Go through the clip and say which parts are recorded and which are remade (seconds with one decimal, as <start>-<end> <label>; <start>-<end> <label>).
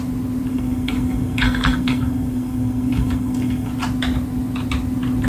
0.0-0.5 recorded; 0.5-3.7 remade; 3.7-5.3 recorded